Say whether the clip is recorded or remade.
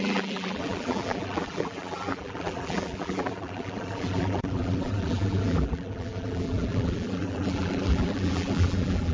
remade